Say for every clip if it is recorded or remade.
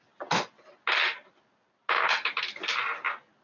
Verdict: recorded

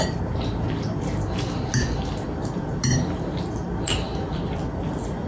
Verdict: recorded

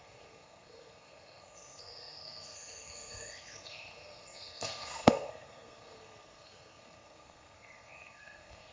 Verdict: remade